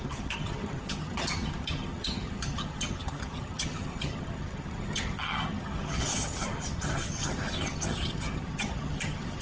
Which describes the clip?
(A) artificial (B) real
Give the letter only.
A